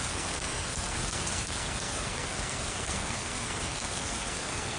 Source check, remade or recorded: remade